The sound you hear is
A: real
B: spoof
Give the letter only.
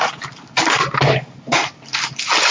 A